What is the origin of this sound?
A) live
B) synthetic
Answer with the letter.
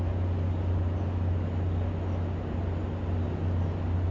A